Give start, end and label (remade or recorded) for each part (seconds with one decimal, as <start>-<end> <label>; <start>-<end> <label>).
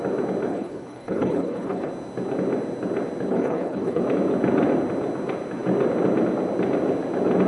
0.0-0.5 recorded; 0.5-1.9 remade; 1.9-3.3 recorded; 3.3-4.0 remade; 4.0-7.5 recorded